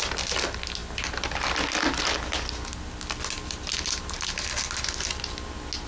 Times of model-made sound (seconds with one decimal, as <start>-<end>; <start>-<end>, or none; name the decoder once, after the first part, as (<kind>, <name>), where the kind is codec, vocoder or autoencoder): none